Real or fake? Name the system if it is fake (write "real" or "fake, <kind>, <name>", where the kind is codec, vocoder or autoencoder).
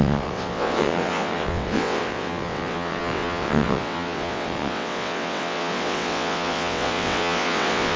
fake, vocoder, WaveNeXt